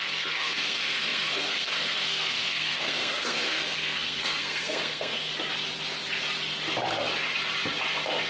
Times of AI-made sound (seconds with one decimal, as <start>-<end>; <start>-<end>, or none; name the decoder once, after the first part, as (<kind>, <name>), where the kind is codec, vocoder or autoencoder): 0.0-5.3 (codec, SNAC)